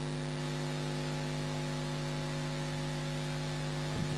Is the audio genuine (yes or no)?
yes